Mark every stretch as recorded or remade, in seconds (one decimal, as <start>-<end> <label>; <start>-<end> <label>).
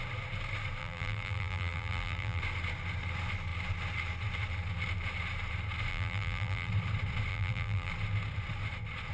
0.0-0.8 recorded; 0.8-2.4 remade; 2.4-5.9 recorded; 5.9-6.7 remade; 6.7-7.3 recorded; 7.3-7.9 remade; 7.9-9.1 recorded